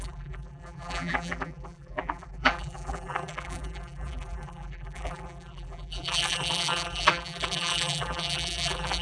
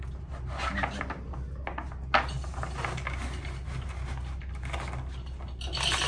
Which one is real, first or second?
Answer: second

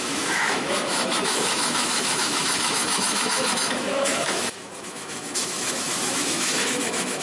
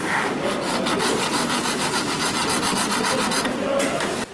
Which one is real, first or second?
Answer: second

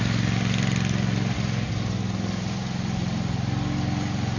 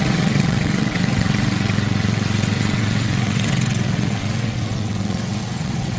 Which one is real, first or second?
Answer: first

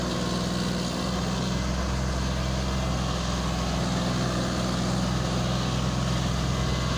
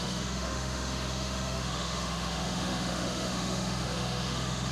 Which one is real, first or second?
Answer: first